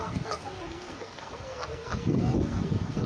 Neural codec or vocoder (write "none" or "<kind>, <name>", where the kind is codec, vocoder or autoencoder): codec, SNAC